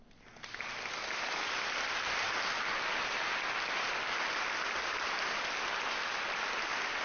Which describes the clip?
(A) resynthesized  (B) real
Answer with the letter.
B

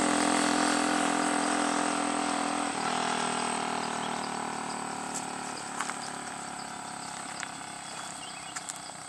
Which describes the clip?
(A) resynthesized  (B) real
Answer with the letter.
B